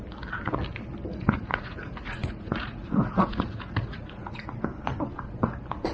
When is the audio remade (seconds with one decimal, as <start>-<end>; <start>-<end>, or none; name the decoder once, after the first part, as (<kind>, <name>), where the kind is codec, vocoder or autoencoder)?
1.1-4.6 (vocoder, Vocos)